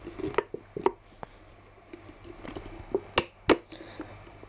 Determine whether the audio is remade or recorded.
recorded